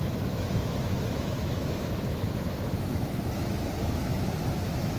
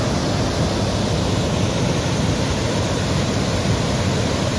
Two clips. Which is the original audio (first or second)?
second